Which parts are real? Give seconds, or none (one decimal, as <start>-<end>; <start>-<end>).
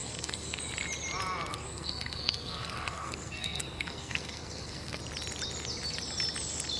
0.6-1.5; 5.0-6.8